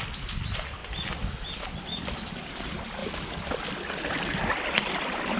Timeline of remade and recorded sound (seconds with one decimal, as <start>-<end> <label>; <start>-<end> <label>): 0.0-0.8 recorded; 0.8-1.8 remade; 1.8-3.0 recorded; 3.0-5.4 remade